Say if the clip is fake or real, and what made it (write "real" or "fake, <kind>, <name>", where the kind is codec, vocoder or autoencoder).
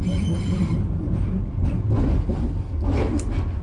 real